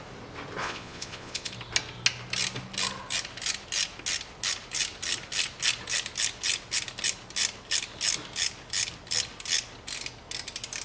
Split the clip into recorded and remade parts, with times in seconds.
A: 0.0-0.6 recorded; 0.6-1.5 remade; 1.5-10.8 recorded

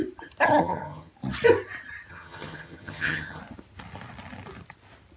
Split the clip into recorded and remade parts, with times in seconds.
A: 0.0-0.6 recorded; 0.6-1.1 remade; 1.1-2.1 recorded; 2.1-3.4 remade; 3.4-5.2 recorded